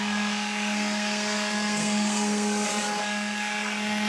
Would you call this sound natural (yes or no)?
no